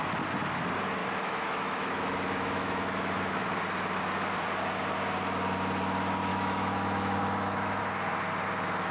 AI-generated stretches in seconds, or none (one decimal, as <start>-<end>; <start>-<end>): 1.0-3.6; 6.3-7.8